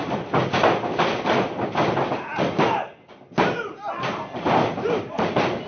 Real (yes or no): yes